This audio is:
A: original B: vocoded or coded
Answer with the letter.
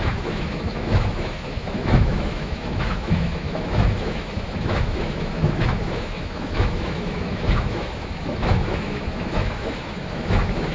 B